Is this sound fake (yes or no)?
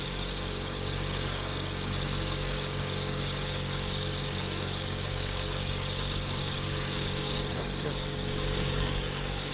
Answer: yes